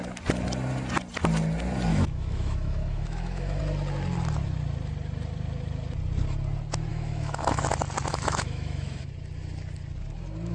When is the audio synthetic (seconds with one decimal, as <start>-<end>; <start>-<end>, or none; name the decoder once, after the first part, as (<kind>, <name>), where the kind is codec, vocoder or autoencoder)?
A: 1.9-3.6 (autoencoder, DAC-VAE); 6.9-7.6; 8.1-9.1